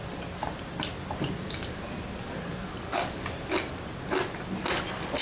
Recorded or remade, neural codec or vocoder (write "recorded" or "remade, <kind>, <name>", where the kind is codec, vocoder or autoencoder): recorded